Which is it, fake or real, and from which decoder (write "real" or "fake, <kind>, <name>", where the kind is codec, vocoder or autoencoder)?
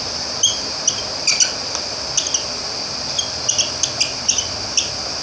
real